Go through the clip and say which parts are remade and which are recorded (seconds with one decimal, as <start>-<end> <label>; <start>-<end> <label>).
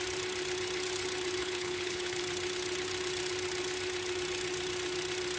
0.0-1.4 recorded; 1.4-2.2 remade; 2.2-5.4 recorded